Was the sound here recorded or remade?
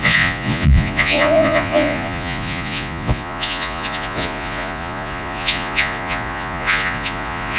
remade